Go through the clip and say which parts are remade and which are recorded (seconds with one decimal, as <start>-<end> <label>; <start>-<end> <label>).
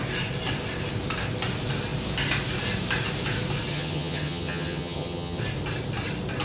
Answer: 0.0-3.7 recorded; 3.7-5.4 remade; 5.4-6.4 recorded